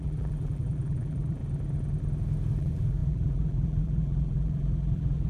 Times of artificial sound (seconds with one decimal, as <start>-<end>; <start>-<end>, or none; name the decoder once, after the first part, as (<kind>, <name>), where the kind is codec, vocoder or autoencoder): 0.0-1.4 (vocoder, BigVGAN v2); 2.6-5.3